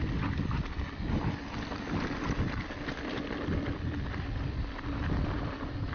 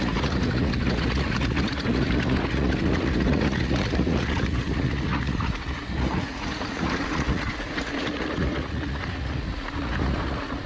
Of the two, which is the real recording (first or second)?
first